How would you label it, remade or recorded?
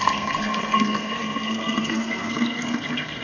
remade